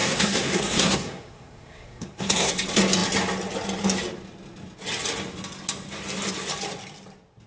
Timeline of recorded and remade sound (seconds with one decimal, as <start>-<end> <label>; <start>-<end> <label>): 0.0-2.5 remade; 2.5-7.5 recorded